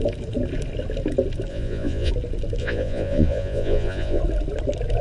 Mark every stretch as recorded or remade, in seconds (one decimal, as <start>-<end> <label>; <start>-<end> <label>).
0.0-1.5 recorded; 1.5-2.1 remade; 2.1-2.6 recorded; 2.6-4.2 remade; 4.2-5.0 recorded